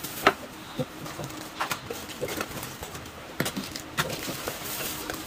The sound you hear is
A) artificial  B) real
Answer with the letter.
A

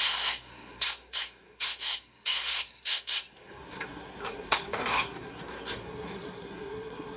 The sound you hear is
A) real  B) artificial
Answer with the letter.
B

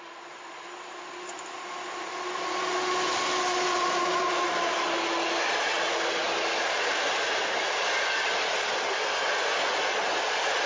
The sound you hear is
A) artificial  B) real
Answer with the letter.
B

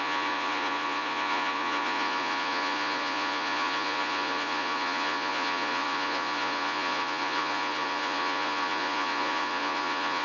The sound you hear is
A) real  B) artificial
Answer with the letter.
B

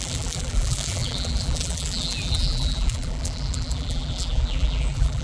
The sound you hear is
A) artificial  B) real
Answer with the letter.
A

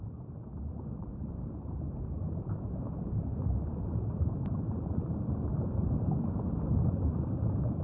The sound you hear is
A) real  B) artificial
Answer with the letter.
A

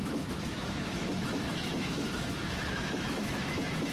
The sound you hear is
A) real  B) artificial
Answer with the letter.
B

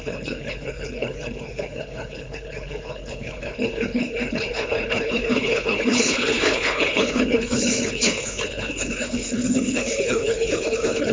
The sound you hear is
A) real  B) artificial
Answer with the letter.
B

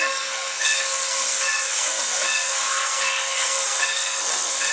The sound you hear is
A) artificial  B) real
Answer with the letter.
A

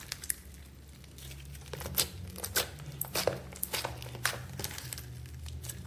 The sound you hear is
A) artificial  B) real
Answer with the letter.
B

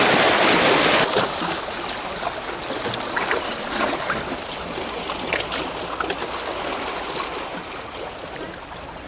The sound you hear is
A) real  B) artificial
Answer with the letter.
A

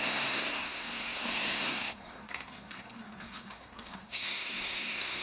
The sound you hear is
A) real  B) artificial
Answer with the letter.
B